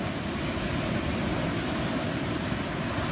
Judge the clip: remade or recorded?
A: recorded